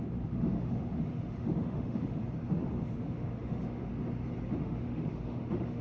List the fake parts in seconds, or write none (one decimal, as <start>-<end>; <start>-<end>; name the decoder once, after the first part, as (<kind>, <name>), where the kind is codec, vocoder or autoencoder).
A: 0.0-2.2 (autoencoder, DAC-VAE); 2.7-3.9; 4.6-5.8